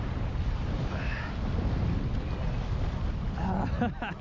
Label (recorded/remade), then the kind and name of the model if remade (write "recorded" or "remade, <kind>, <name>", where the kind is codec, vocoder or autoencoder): recorded